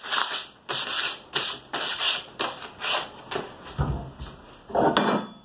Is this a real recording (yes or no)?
yes